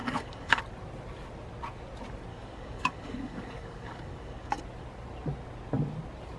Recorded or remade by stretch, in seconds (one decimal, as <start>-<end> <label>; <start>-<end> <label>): 0.0-0.6 remade; 0.6-2.3 recorded; 2.3-4.6 remade; 4.6-6.4 recorded